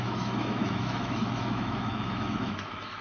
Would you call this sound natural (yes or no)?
no